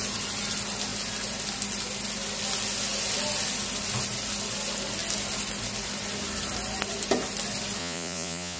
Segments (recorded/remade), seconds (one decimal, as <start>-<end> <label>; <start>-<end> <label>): 0.0-7.8 recorded; 7.8-8.6 remade